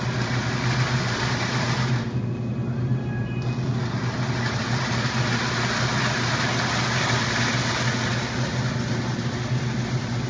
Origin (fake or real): real